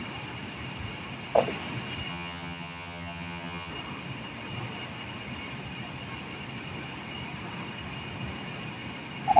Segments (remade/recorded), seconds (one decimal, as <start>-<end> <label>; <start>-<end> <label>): 0.0-2.1 recorded; 2.1-3.7 remade; 3.7-9.4 recorded